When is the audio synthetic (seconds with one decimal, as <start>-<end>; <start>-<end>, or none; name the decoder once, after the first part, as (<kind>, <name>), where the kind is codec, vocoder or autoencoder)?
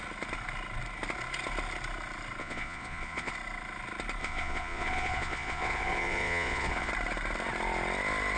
2.4-3.3 (vocoder, Vocos); 4.2-6.9